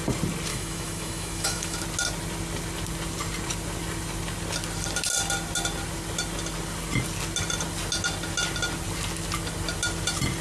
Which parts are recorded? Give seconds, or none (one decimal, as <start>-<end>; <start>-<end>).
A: 0.0-0.5; 1.8-10.4